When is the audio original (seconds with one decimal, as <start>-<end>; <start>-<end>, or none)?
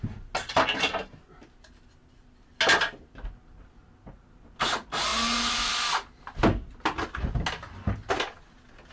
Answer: 0.0-8.9